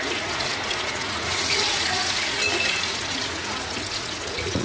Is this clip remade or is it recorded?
remade